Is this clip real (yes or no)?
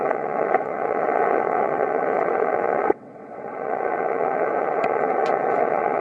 no